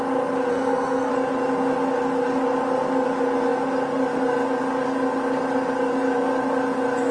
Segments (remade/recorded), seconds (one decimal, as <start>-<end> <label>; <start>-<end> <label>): 0.0-0.5 recorded; 0.5-1.1 remade; 1.1-7.1 recorded

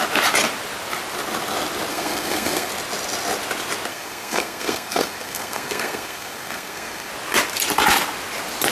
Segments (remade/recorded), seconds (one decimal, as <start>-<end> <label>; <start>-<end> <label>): 0.0-1.9 recorded; 1.9-2.7 remade; 2.7-3.9 recorded; 3.9-7.1 remade; 7.1-8.7 recorded

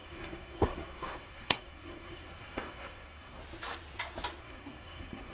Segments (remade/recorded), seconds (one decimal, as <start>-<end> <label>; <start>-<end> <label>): 0.0-3.4 remade; 3.4-4.4 recorded; 4.4-5.3 remade